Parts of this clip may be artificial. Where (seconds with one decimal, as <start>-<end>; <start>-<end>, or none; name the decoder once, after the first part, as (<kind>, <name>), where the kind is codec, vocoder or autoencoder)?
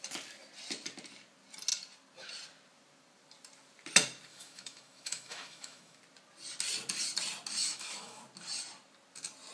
4.3-6.0 (autoencoder, DAC-VAE); 7.6-8.2